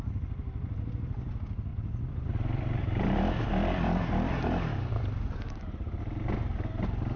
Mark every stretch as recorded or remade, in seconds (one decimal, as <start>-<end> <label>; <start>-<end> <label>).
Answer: 0.0-1.7 recorded; 1.7-6.0 remade; 6.0-7.2 recorded

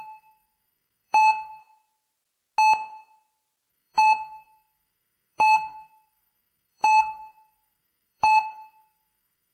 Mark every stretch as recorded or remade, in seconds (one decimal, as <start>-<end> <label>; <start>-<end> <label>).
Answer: 0.0-1.6 remade; 1.6-3.7 recorded; 3.7-9.5 remade

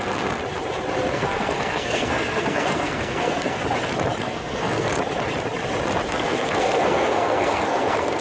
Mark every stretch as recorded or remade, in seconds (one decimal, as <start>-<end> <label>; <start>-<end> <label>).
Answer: 0.0-0.4 remade; 0.4-1.1 recorded; 1.1-3.6 remade; 3.6-4.2 recorded; 4.2-4.9 remade; 4.9-6.1 recorded; 6.1-8.2 remade

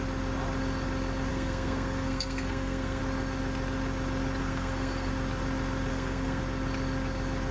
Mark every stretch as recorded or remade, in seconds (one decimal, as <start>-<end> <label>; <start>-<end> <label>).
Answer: 0.0-1.3 recorded; 1.3-3.0 remade; 3.0-4.4 recorded; 4.4-5.1 remade; 5.1-5.9 recorded; 5.9-6.4 remade; 6.4-7.5 recorded

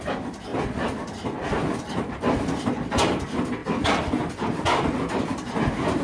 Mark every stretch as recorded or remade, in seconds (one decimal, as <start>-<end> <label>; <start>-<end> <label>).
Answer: 0.0-6.0 recorded

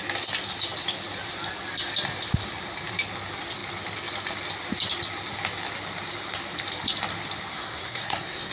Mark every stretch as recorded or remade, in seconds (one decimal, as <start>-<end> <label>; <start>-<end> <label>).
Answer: 0.0-7.5 recorded; 7.5-8.5 remade

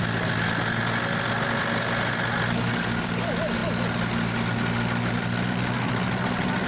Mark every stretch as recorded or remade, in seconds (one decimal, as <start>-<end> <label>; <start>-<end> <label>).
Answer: 0.0-6.7 recorded

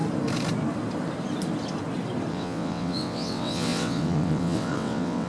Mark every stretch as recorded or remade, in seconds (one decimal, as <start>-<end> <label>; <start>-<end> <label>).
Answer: 0.0-2.3 recorded; 2.3-5.3 remade